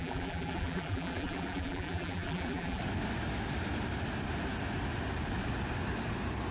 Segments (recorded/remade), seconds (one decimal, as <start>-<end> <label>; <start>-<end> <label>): 0.0-2.8 remade; 2.8-6.5 recorded

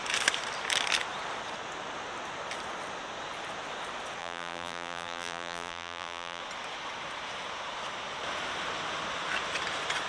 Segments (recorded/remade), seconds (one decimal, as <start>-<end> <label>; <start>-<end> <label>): 0.0-4.2 recorded; 4.2-6.4 remade; 6.4-10.1 recorded

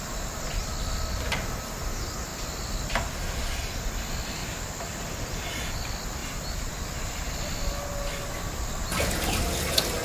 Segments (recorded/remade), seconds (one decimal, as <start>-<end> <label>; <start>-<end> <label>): 0.0-4.4 recorded; 4.4-5.0 remade; 5.0-10.0 recorded

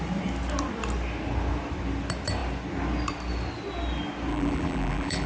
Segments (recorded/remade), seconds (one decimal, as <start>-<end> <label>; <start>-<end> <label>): 0.0-4.3 recorded; 4.3-5.3 remade

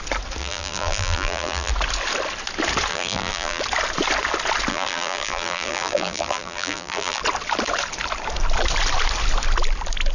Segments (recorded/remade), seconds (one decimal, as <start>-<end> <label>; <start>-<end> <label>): 0.0-0.4 recorded; 0.4-1.7 remade; 1.7-2.9 recorded; 2.9-3.6 remade; 3.6-4.7 recorded; 4.7-7.2 remade; 7.2-10.1 recorded

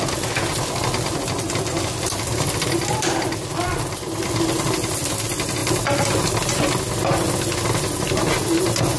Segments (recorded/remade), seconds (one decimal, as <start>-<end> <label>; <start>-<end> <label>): 0.0-9.0 recorded

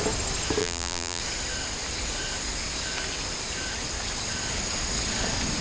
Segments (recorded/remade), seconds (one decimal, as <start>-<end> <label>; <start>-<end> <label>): 0.0-0.6 recorded; 0.6-1.2 remade; 1.2-5.6 recorded